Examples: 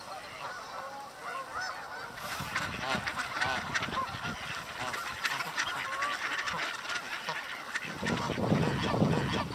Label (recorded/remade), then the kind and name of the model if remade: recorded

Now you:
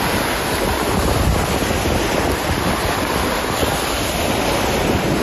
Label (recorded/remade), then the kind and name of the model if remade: recorded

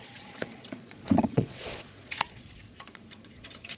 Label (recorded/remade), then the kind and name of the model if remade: remade, vocoder, Vocos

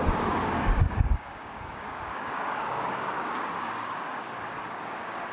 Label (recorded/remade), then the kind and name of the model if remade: remade, codec, DAC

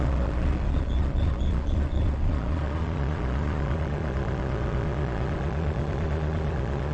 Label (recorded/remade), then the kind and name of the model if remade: remade, vocoder, Vocos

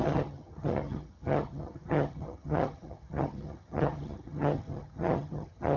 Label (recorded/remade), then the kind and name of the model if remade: remade, vocoder, HiFi-GAN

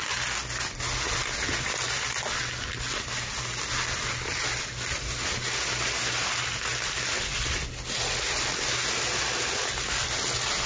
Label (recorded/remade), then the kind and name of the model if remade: recorded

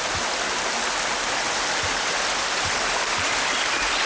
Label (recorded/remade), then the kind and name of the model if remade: recorded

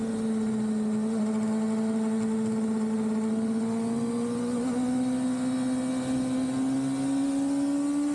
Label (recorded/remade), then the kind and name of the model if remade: recorded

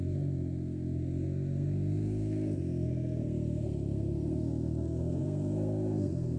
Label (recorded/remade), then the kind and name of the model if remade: remade, codec, SNAC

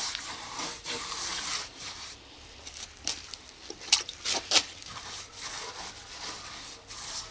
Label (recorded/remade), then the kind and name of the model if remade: remade, vocoder, BigVGAN v2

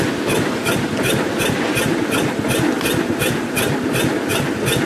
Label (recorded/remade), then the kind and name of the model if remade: recorded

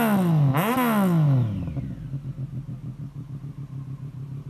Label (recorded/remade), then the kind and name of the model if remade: recorded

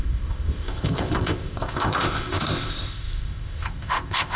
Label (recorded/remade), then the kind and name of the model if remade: remade, codec, ZipCodec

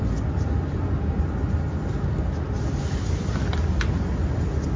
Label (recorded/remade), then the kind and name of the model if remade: recorded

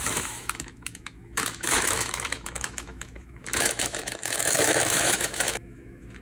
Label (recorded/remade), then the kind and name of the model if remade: remade, autoencoder, DAC-VAE